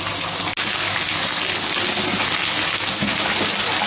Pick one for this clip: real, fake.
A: real